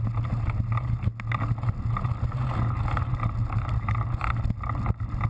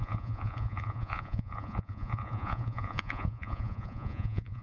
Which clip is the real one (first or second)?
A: first